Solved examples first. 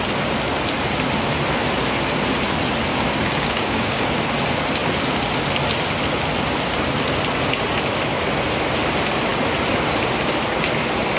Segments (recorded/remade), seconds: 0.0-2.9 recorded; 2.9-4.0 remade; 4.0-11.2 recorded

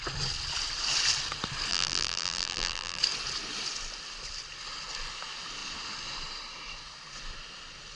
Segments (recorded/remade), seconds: 0.0-1.7 recorded; 1.7-3.0 remade; 3.0-7.9 recorded